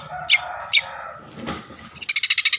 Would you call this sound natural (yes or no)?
yes